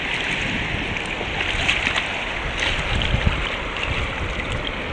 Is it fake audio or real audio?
real